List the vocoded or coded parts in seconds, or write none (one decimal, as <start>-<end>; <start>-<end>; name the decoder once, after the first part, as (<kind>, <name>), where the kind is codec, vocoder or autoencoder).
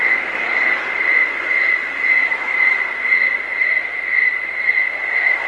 2.2-5.5 (vocoder, BigVGAN v2)